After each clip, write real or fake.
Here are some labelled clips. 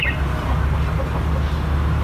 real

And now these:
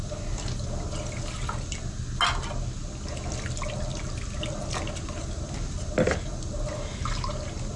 real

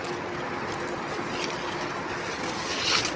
real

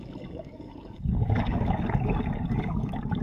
fake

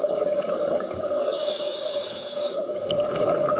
fake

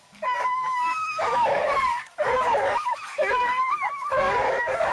fake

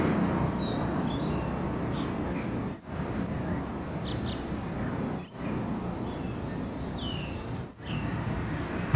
real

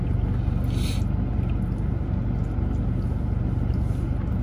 real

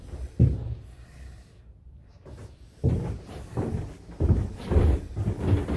real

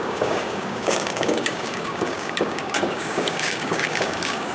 fake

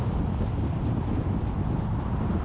real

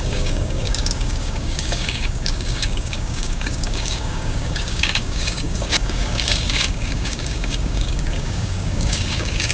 fake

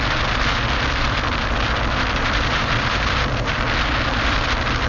real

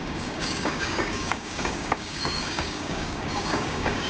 fake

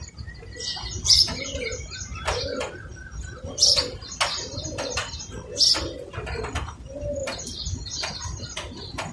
real